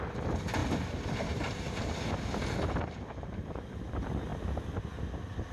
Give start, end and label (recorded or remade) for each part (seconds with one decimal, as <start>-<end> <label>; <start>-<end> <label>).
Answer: 0.0-5.5 recorded